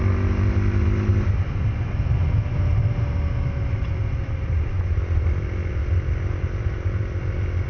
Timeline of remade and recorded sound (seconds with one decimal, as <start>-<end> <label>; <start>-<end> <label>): 0.0-7.7 recorded

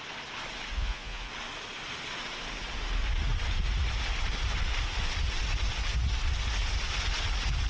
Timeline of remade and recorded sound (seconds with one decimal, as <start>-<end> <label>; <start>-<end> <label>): 0.0-0.7 recorded; 0.7-1.3 remade; 1.3-7.7 recorded

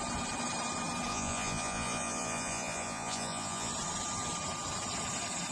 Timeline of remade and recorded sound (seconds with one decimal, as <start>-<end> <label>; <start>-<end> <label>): 0.0-1.1 recorded; 1.1-3.7 remade; 3.7-5.5 recorded

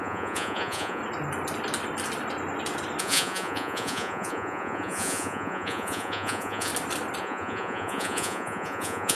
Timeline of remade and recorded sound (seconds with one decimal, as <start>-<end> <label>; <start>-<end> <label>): 0.0-1.0 remade; 1.0-3.0 recorded; 3.0-6.7 remade; 6.7-7.2 recorded; 7.2-9.1 remade

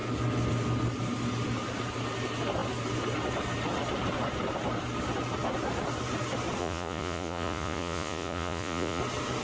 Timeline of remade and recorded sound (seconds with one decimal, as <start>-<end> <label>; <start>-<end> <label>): 0.0-6.6 recorded; 6.6-9.0 remade; 9.0-9.4 recorded

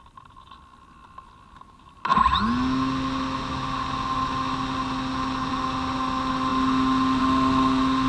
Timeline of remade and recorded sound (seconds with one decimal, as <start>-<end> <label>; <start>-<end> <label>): 0.0-8.1 recorded